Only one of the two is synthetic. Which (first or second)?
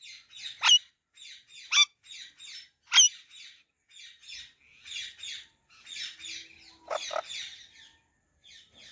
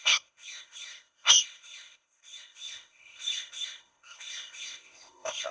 second